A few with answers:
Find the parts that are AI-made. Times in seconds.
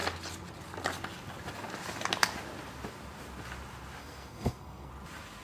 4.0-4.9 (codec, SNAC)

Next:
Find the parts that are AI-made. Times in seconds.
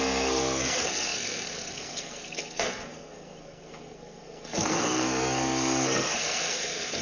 0.0-7.0 (codec, SNAC)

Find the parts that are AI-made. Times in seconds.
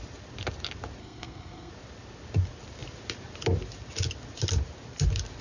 1.0-1.7 (codec, SNAC)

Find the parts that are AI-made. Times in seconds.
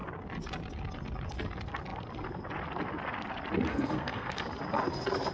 3.7-4.3 (codec, SNAC)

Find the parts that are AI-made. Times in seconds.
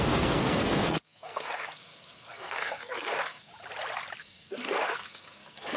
0.0-3.5 (codec, SNAC); 4.2-5.8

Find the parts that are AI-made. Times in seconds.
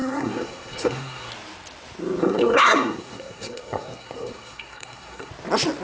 0.0-1.3 (codec, SNAC); 2.2-5.3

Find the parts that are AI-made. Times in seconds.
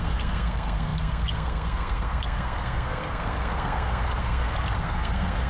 0.0-5.5 (codec, SNAC)